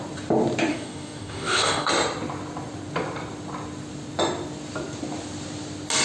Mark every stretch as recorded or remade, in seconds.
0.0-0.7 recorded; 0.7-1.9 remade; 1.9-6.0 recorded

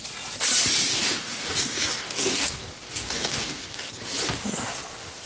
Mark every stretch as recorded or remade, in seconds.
0.0-0.9 recorded; 0.9-3.9 remade; 3.9-5.3 recorded